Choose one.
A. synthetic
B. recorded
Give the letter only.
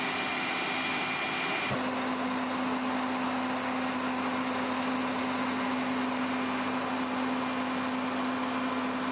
B